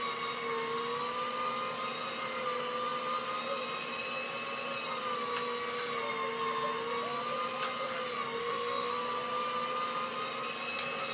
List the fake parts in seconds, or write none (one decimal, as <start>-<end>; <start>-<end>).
8.4-8.9